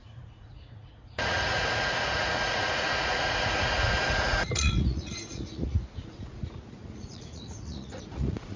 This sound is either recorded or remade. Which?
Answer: remade